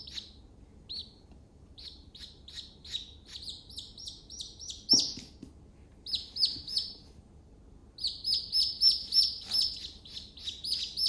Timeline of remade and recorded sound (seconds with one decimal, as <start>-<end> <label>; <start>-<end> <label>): 0.0-1.0 recorded; 1.0-2.2 remade; 2.2-11.1 recorded